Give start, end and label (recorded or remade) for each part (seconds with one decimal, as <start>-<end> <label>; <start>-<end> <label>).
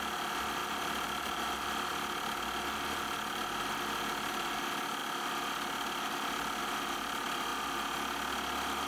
0.0-0.6 recorded; 0.6-1.5 remade; 1.5-8.9 recorded